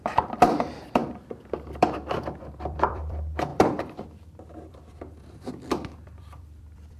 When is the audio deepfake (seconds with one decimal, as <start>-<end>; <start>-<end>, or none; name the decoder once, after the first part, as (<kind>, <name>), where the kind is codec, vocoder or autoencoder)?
0.0-7.0 (vocoder, BigVGAN v2)